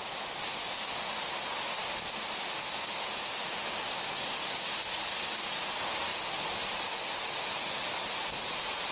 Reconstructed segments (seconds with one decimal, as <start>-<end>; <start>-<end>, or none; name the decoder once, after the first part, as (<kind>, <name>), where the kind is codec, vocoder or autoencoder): none